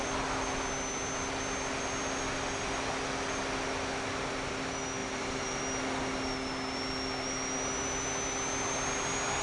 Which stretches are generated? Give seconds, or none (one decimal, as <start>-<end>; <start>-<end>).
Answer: 5.0-5.6